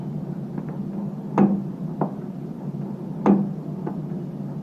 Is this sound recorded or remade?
recorded